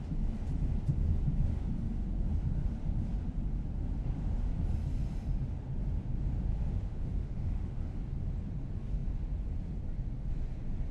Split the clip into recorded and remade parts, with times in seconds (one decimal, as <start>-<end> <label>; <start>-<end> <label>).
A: 0.0-6.6 recorded; 6.6-8.0 remade; 8.0-10.9 recorded